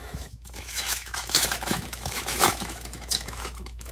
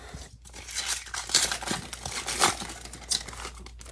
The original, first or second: second